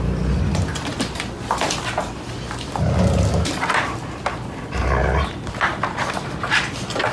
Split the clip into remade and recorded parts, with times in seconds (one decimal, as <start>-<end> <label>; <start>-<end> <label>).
0.0-7.1 recorded